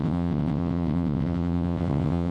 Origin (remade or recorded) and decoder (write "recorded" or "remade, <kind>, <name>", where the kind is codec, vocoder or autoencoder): remade, vocoder, WaveNeXt